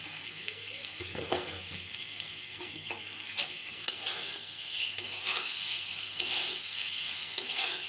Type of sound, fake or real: fake